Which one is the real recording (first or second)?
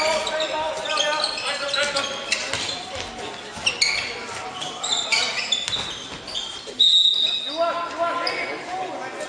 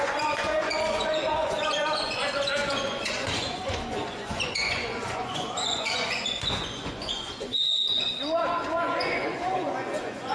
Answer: first